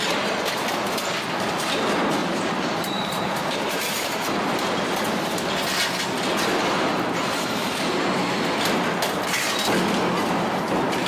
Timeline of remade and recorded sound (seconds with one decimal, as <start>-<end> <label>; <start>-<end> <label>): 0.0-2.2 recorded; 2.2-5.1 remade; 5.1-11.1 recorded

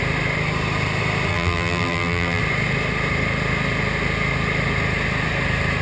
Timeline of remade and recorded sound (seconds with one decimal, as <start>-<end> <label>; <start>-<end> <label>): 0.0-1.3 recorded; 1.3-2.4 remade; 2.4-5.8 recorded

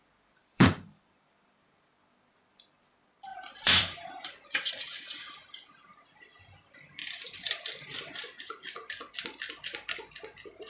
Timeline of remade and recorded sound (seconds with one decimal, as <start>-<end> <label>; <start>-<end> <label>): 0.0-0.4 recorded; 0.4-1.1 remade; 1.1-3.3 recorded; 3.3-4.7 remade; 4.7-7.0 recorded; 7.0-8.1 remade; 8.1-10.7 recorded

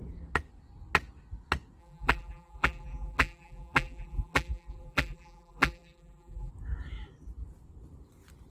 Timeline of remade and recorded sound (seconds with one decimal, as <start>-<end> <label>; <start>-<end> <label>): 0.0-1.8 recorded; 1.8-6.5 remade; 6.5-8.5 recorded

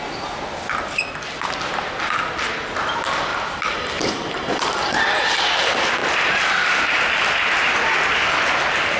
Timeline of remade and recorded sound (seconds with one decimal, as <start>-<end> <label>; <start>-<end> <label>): 0.0-3.3 recorded; 3.3-5.6 remade; 5.6-6.0 recorded; 6.0-7.1 remade; 7.1-9.0 recorded

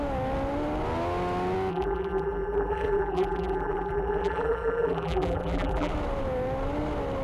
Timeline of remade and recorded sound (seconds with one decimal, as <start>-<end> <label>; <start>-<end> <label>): 0.0-1.7 recorded; 1.7-5.9 remade; 5.9-7.2 recorded